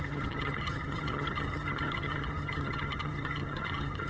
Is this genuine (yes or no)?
no